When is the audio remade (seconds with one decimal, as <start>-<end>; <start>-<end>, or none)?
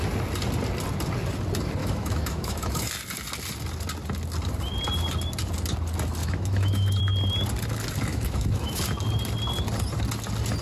1.8-2.9; 6.2-7.0; 8.1-8.8